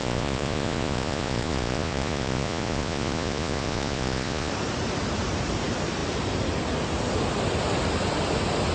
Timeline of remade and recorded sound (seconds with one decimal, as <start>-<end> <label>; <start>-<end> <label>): 0.0-4.5 remade; 4.5-8.7 recorded